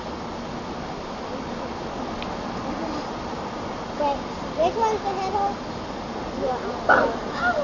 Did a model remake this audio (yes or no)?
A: no